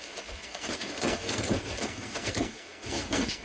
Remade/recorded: remade